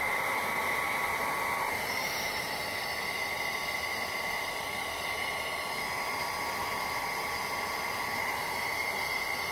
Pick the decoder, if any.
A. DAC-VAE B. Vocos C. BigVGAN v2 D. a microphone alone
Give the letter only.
D